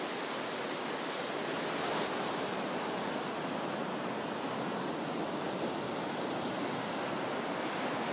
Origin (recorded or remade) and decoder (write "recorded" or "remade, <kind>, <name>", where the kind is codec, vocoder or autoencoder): recorded